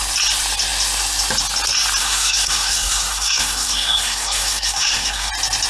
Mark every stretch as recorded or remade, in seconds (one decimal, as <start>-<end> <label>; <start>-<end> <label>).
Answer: 0.0-2.0 recorded; 2.0-5.3 remade; 5.3-5.7 recorded